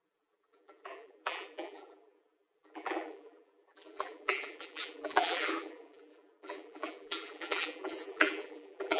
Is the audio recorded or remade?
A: remade